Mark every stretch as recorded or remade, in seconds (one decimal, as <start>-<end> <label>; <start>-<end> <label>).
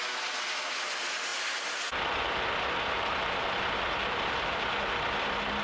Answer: 0.0-5.6 recorded